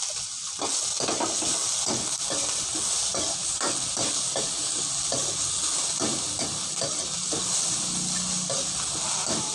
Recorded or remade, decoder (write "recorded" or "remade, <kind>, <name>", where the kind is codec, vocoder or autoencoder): recorded